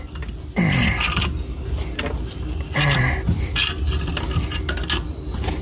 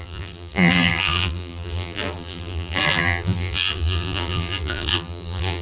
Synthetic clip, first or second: second